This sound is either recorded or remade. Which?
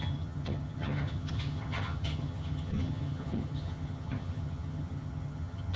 remade